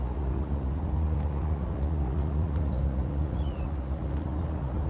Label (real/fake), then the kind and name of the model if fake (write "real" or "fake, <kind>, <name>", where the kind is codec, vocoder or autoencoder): fake, vocoder, Vocos